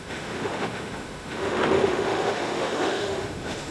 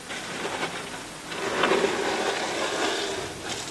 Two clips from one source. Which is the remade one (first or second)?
first